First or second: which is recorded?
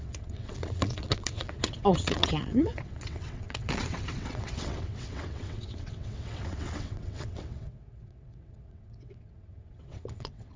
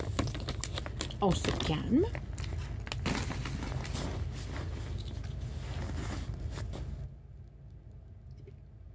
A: second